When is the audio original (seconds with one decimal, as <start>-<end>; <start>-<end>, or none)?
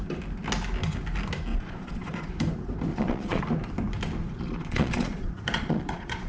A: 0.0-1.5; 2.3-2.9; 3.4-4.2